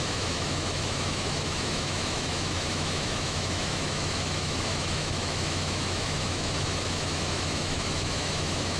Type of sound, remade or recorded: remade